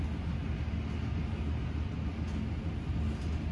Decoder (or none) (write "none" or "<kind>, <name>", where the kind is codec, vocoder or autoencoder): none